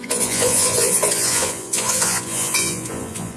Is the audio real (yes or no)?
no